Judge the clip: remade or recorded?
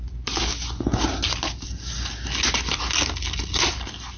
recorded